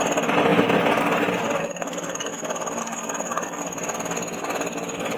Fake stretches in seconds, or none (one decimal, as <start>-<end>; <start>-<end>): 1.6-2.3; 2.8-3.6